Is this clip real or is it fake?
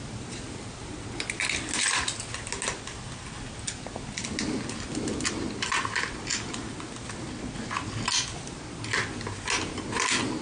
real